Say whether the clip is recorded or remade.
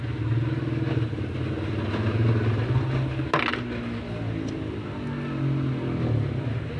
recorded